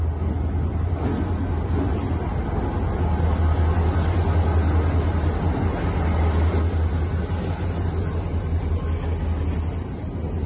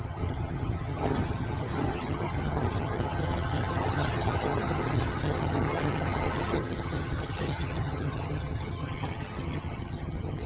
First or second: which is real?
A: first